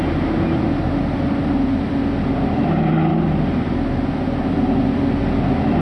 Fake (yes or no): no